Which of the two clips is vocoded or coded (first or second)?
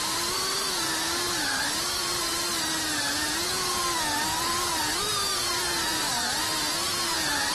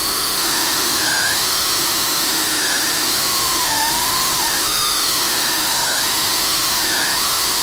second